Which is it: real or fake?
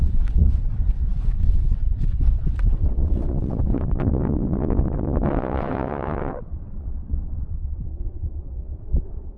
fake